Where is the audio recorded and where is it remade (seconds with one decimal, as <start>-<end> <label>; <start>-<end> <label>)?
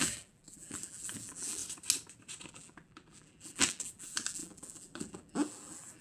0.0-1.6 remade; 1.6-2.5 recorded; 2.5-6.0 remade